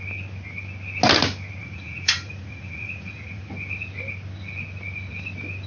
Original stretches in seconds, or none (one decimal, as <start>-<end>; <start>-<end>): 0.0-1.6; 3.5-5.7